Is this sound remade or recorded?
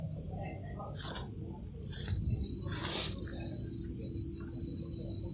recorded